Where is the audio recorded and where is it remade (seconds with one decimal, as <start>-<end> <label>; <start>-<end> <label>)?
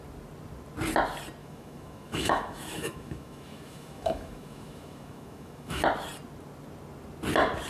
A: 0.0-1.4 recorded; 1.4-5.8 remade; 5.8-7.7 recorded